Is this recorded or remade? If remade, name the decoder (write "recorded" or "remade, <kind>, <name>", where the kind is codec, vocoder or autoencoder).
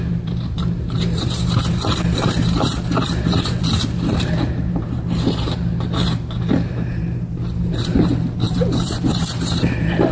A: remade, vocoder, BigVGAN v2